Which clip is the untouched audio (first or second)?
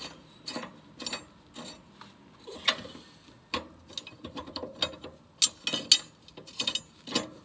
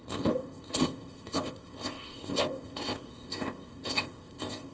first